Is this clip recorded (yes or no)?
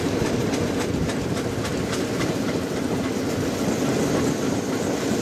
yes